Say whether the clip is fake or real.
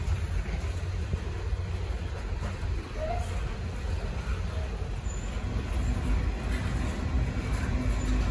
real